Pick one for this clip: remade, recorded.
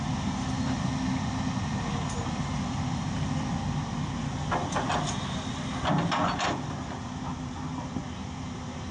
recorded